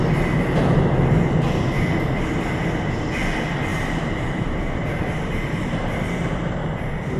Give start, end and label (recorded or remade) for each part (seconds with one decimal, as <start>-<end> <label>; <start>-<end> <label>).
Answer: 0.0-3.7 recorded; 3.7-7.2 remade